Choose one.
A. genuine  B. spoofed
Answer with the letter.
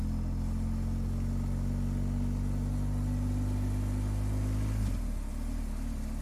A